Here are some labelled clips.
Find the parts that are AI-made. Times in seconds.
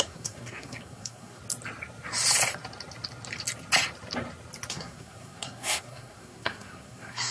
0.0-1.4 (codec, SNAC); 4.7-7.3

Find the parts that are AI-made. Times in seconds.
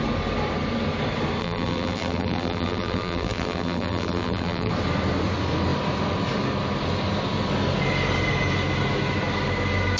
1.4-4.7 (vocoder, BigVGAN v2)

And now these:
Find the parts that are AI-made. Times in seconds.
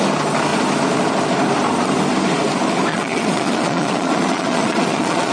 2.9-5.3 (vocoder, Vocos)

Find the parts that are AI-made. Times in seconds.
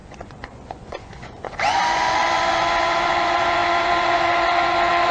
0.0-5.1 (vocoder, Vocos)